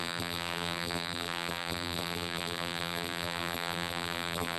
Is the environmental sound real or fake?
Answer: fake